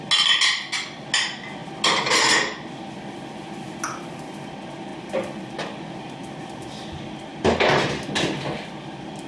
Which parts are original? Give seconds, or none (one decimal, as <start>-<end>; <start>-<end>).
0.0-9.3